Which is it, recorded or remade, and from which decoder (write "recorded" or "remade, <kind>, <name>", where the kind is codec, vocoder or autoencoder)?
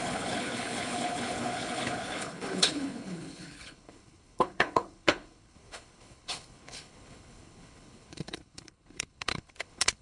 remade, codec, HILCodec